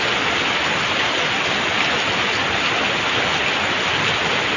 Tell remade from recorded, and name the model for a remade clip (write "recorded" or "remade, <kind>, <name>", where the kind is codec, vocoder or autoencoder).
recorded